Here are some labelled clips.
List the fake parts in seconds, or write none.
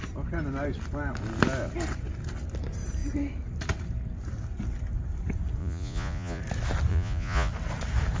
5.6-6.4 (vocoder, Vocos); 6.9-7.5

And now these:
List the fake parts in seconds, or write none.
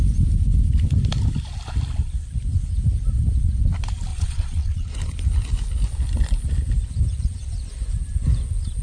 4.1-5.0 (vocoder, Vocos)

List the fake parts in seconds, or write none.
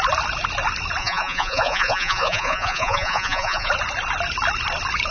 1.0-3.7 (vocoder, Vocos)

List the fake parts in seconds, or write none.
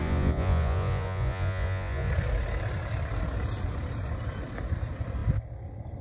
0.0-2.1 (vocoder, Vocos)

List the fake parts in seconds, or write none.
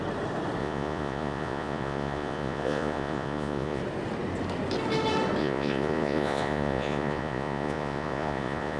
0.6-3.8 (vocoder, Vocos); 5.4-8.8